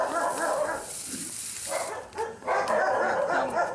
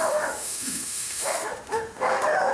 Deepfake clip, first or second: second